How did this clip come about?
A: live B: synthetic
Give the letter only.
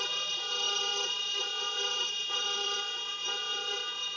B